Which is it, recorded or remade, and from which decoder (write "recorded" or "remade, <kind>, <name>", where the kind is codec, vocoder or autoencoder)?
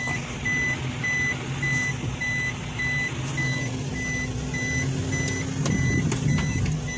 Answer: recorded